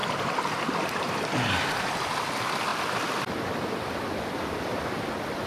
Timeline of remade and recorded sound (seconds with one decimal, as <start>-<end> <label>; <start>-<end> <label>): 0.0-2.2 remade; 2.2-5.5 recorded